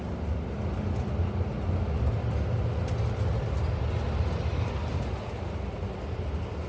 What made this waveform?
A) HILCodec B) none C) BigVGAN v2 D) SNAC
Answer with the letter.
B